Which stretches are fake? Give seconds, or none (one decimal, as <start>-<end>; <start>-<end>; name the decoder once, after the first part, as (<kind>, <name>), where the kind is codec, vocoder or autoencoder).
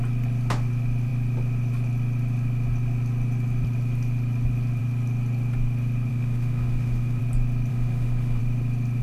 6.1-7.2 (autoencoder, DAC-VAE); 7.7-8.4